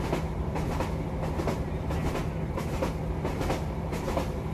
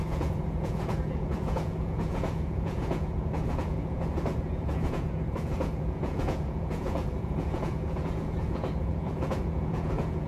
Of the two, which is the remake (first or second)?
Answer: second